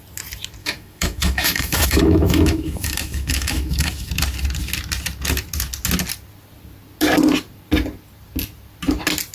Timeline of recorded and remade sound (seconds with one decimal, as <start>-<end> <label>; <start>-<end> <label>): 0.0-0.6 recorded; 0.6-4.1 remade; 4.1-9.3 recorded

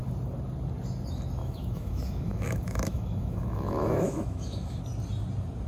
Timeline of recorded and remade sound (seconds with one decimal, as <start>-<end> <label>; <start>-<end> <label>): 0.0-1.4 recorded; 1.4-4.8 remade; 4.8-5.7 recorded

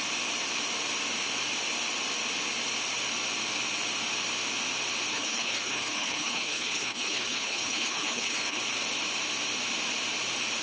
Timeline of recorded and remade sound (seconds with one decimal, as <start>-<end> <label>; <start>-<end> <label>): 0.0-5.1 recorded; 5.1-8.6 remade; 8.6-10.6 recorded